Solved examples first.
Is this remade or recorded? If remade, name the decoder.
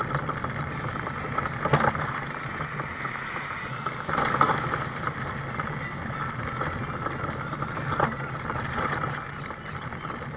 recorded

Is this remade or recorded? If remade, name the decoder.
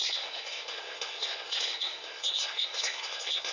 remade, codec, SNAC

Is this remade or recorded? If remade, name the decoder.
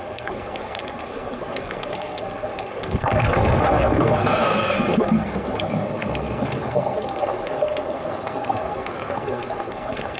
remade, codec, SNAC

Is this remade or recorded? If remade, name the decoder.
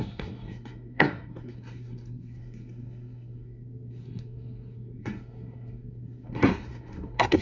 remade, codec, SNAC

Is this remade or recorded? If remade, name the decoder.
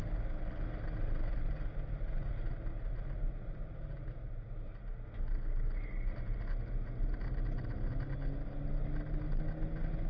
recorded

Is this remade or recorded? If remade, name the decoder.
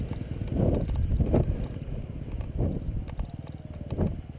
recorded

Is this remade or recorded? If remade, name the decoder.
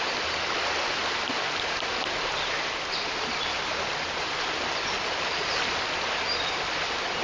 recorded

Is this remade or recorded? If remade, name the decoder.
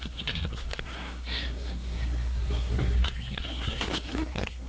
remade, codec, SNAC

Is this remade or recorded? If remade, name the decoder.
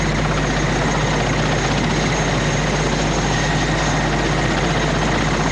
recorded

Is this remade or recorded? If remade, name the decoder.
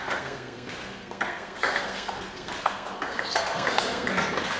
remade, codec, SNAC